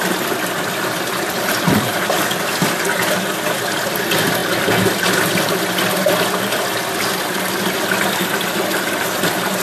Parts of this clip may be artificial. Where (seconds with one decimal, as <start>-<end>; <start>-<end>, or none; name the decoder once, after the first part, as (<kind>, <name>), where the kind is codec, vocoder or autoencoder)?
none